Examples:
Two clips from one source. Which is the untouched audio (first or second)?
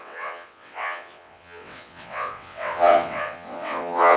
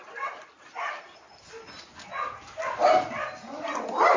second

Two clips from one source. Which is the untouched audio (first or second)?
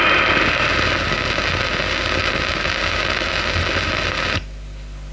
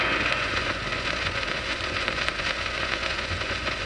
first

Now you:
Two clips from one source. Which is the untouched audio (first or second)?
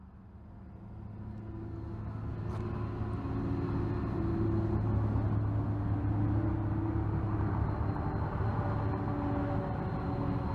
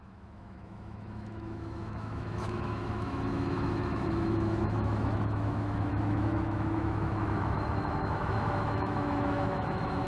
first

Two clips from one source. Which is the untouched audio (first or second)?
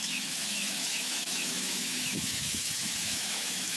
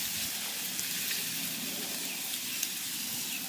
second